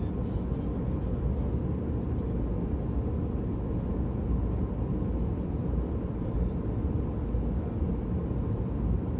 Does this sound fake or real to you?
real